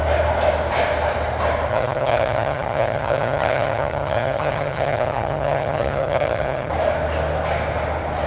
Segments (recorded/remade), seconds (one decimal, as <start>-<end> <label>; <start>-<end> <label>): 0.0-1.7 recorded; 1.7-6.7 remade; 6.7-8.3 recorded